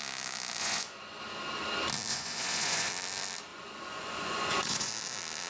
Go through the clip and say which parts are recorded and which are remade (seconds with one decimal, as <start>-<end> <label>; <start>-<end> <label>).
0.0-0.6 recorded; 0.6-1.2 remade; 1.2-2.1 recorded; 2.1-2.9 remade; 2.9-3.5 recorded; 3.5-4.9 remade; 4.9-5.5 recorded